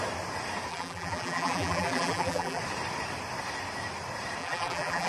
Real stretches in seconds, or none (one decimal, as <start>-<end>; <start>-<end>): 0.0-0.7; 2.6-4.4